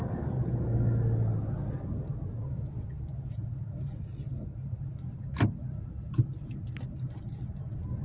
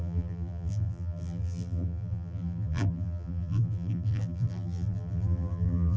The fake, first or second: second